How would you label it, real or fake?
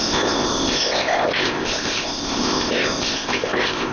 fake